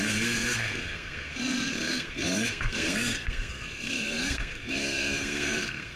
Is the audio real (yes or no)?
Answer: no